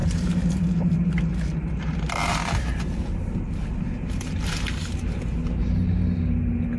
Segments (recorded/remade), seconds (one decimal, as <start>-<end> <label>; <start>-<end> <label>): 0.0-6.8 recorded

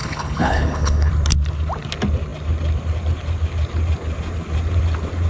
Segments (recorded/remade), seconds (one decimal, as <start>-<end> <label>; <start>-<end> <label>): 0.0-1.1 remade; 1.1-5.3 recorded

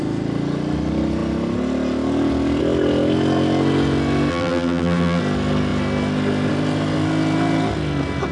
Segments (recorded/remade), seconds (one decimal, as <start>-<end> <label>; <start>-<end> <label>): 0.0-4.3 recorded; 4.3-5.2 remade; 5.2-8.3 recorded

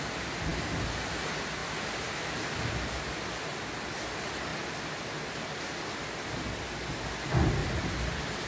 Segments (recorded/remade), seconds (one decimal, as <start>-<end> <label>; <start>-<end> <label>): 0.0-0.5 recorded; 0.5-1.1 remade; 1.1-7.6 recorded; 7.6-8.5 remade

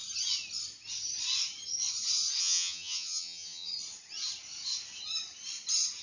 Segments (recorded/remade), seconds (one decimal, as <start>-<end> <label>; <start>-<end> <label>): 0.0-2.4 recorded; 2.4-3.7 remade; 3.7-6.0 recorded

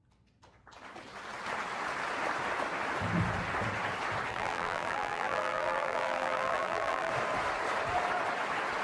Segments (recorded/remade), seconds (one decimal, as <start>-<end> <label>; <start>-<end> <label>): 0.0-4.3 recorded; 4.3-7.1 remade; 7.1-8.8 recorded

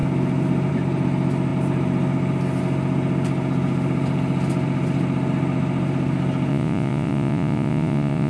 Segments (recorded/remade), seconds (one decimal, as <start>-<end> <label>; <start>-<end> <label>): 0.0-6.5 recorded; 6.5-8.3 remade

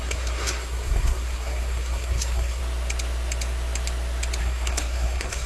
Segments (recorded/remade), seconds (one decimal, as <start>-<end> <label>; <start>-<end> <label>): 0.0-2.6 remade; 2.6-4.4 recorded; 4.4-5.5 remade